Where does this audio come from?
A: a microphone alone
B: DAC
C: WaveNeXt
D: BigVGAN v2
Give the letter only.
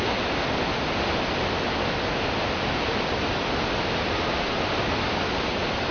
A